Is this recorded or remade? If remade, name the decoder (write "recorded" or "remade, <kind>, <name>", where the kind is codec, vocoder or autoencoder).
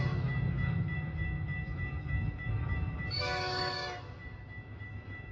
remade, autoencoder, DAC-VAE